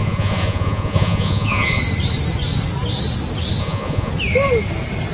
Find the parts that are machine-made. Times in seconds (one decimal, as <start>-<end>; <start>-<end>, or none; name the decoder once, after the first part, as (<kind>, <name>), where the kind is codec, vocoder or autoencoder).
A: 0.0-1.8 (vocoder, Vocos); 3.6-4.1

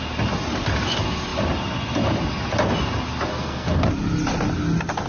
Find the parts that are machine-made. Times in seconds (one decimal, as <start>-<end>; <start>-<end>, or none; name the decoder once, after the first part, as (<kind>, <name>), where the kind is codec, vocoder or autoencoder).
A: 3.3-3.8 (codec, SNAC)

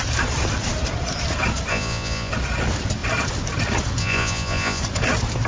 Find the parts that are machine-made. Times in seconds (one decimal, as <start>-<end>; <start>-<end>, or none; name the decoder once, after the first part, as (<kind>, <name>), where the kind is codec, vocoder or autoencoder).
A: 1.7-2.3 (vocoder, Vocos); 4.0-4.8

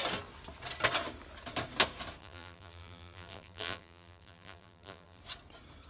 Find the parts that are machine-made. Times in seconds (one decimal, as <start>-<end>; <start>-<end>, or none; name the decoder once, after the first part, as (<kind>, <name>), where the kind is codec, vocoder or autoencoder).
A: 2.2-5.2 (vocoder, BigVGAN v2)

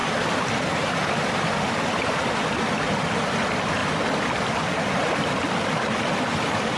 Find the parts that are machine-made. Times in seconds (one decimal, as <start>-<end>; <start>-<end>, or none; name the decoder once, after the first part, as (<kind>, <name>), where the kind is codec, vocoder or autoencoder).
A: none

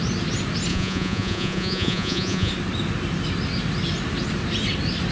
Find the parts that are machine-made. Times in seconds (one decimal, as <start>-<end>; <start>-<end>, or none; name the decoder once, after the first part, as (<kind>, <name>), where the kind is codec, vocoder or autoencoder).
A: 0.7-2.5 (vocoder, Vocos)

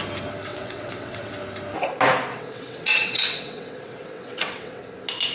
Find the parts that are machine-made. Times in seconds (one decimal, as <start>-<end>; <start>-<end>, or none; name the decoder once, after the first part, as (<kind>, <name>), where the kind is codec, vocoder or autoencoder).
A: 0.5-1.3 (vocoder, WaveNeXt); 2.3-4.8

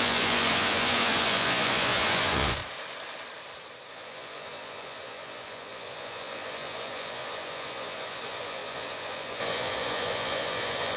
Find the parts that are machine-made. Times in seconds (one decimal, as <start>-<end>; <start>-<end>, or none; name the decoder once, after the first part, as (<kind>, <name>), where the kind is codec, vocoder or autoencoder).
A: 0.0-2.6 (vocoder, Vocos); 3.9-11.0